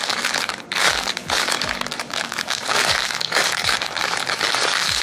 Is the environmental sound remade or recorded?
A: remade